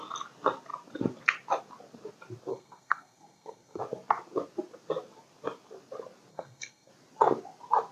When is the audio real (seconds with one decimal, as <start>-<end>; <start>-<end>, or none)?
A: 0.0-2.5; 3.8-6.3; 6.9-7.9

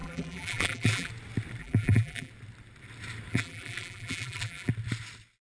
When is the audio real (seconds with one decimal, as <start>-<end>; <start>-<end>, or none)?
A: 1.1-1.6; 2.3-3.3; 4.7-5.5

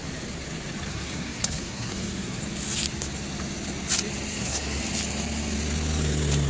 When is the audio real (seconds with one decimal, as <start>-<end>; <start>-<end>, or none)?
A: 0.0-0.9; 2.4-4.3; 4.8-6.5

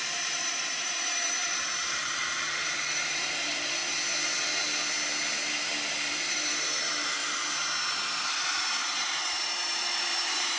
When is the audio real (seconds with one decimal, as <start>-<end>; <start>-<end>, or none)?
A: 3.8-5.9; 7.2-7.9

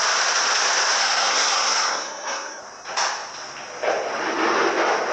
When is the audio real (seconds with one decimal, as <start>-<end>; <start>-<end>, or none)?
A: 0.0-1.0; 2.6-5.1

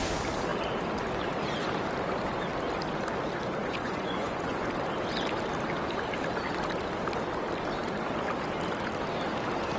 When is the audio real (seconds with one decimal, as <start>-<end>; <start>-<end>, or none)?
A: 0.0-3.6; 4.7-9.8

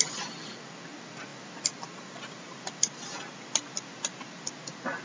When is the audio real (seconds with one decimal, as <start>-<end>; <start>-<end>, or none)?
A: 0.0-5.0

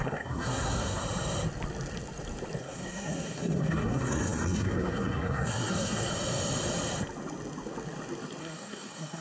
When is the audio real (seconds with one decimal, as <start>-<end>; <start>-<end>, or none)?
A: 1.0-2.6; 6.1-8.4